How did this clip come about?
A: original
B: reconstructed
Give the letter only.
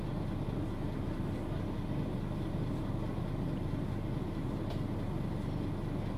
A